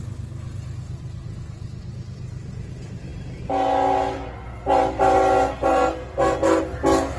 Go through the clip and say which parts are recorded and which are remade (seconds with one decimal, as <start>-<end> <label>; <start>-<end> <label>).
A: 0.0-5.7 recorded; 5.7-6.6 remade; 6.6-7.2 recorded

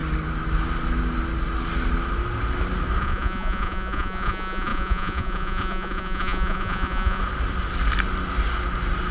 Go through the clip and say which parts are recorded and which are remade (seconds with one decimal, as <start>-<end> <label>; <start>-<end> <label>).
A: 0.0-3.0 recorded; 3.0-7.2 remade; 7.2-9.1 recorded

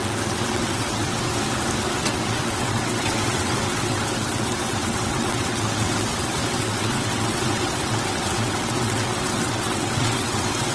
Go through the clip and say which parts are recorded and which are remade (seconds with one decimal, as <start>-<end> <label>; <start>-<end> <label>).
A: 0.0-1.3 remade; 1.3-2.0 recorded; 2.0-10.7 remade

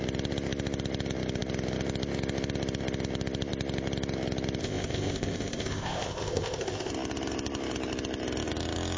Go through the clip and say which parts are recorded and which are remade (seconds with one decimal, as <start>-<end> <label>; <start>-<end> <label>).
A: 0.0-4.6 recorded; 4.6-6.9 remade; 6.9-9.0 recorded

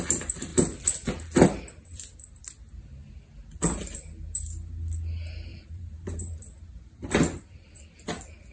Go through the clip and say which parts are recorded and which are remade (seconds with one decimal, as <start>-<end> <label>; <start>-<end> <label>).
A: 0.0-5.5 recorded; 5.5-6.4 remade; 6.4-8.5 recorded